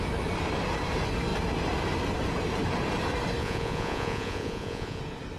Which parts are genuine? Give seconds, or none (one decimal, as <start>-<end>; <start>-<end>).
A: 0.0-3.4; 5.0-5.4